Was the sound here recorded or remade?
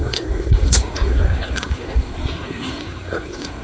remade